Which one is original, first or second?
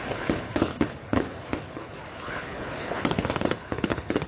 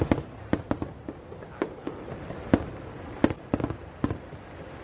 second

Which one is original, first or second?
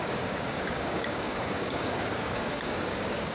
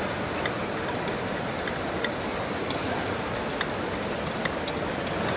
second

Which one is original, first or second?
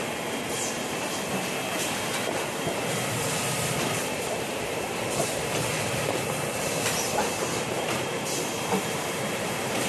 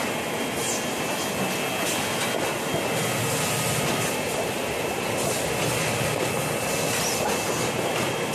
second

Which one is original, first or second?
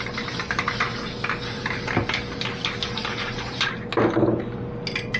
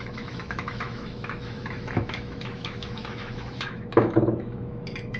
first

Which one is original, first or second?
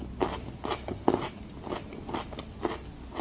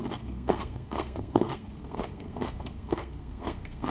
first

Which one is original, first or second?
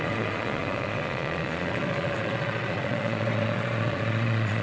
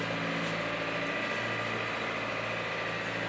second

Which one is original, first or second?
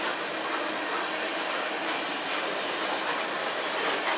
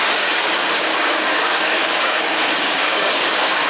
first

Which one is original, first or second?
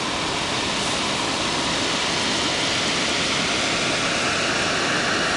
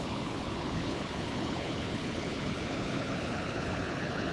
first